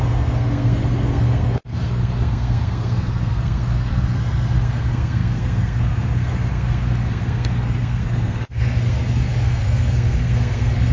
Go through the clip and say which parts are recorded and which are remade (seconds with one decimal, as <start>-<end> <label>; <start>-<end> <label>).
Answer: 0.0-10.9 remade